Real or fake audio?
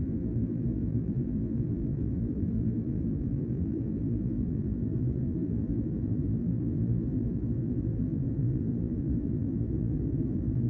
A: fake